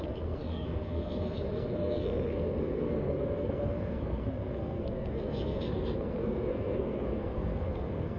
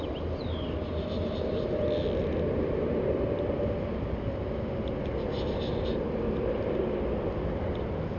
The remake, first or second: first